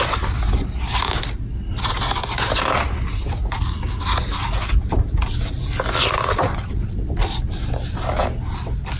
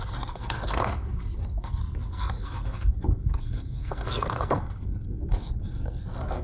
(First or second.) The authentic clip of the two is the first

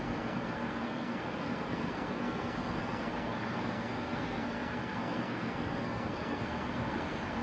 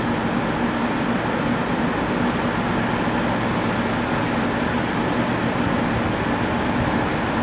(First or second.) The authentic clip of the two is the second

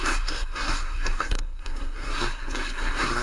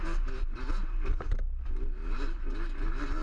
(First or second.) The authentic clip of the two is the second